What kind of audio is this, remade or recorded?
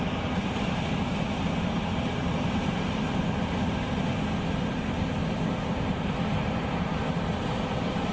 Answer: remade